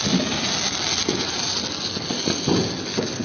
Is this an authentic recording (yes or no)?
yes